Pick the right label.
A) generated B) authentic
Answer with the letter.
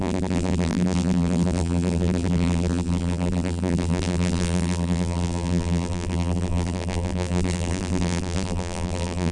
A